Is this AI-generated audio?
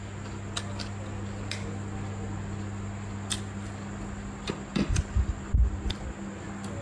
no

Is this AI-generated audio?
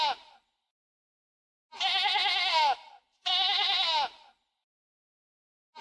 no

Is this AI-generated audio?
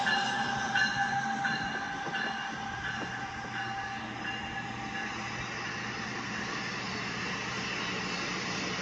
no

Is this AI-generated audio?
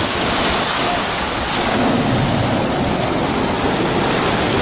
no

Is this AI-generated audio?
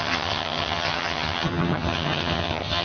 yes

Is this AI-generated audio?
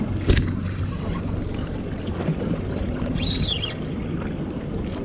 no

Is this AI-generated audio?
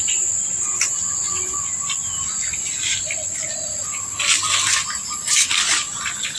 no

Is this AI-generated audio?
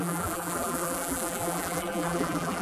yes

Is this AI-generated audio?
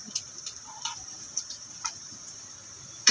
yes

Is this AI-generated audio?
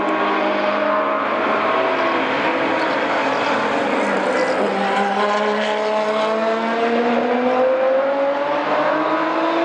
no